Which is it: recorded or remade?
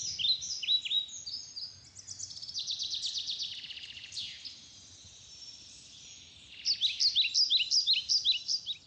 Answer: recorded